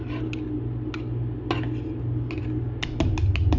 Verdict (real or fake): real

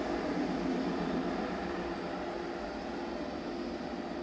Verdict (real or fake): real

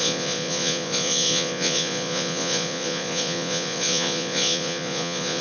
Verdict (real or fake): fake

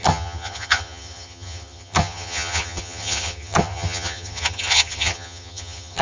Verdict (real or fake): fake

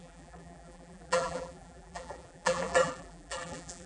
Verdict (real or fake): fake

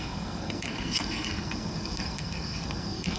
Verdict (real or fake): fake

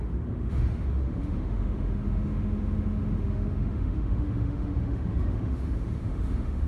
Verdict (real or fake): fake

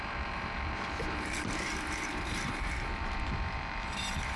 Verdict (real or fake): fake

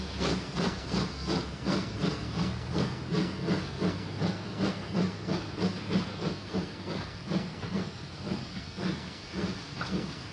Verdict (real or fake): fake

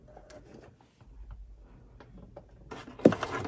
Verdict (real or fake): real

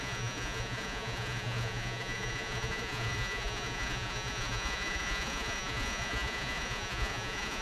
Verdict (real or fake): fake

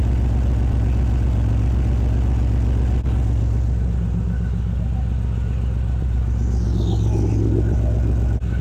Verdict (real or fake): real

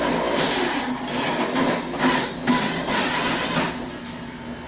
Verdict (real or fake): real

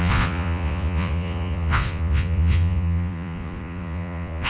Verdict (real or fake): fake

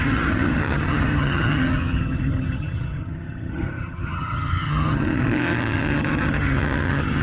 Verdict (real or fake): fake